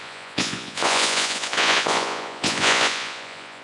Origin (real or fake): fake